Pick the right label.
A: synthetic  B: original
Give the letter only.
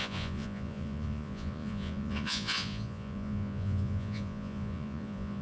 A